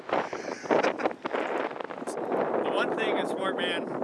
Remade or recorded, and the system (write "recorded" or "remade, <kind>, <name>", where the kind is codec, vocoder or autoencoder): recorded